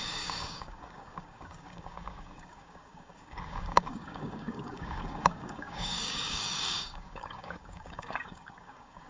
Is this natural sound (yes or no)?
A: no